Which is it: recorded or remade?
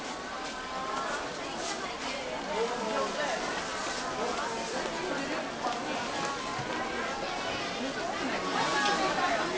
recorded